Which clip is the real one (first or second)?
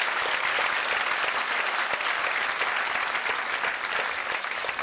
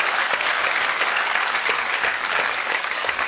first